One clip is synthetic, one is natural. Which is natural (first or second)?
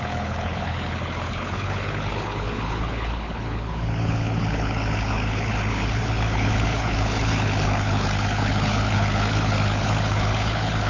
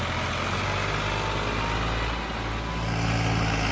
second